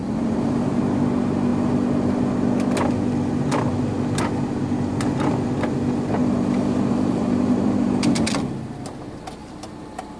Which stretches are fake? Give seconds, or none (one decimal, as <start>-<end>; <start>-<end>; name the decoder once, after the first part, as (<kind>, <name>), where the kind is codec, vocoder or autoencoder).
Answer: 0.0-0.8 (vocoder, BigVGAN v2); 6.2-8.3; 9.4-10.2